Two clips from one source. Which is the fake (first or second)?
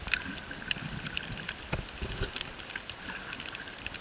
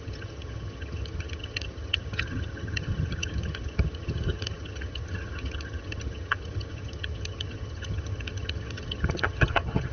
second